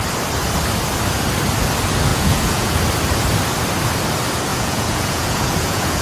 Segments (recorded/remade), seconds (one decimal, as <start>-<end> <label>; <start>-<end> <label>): 0.0-2.1 recorded; 2.1-2.8 remade; 2.8-4.5 recorded; 4.5-6.0 remade